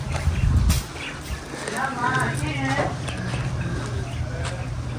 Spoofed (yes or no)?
no